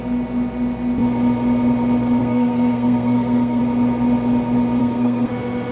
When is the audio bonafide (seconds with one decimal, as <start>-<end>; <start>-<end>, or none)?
0.0-2.2; 3.6-4.8; 5.3-5.7